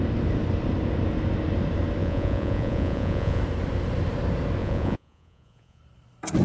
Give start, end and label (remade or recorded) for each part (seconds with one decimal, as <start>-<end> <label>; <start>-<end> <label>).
0.0-2.0 recorded; 2.0-3.4 remade; 3.4-4.6 recorded; 4.6-5.8 remade; 5.8-6.4 recorded